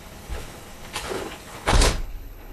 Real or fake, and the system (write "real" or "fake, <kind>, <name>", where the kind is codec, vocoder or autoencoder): fake, codec, HILCodec